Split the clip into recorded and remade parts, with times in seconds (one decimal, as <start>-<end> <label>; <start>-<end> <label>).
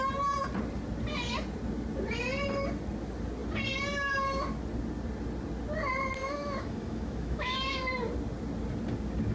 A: 0.0-6.2 recorded; 6.2-7.8 remade; 7.8-9.3 recorded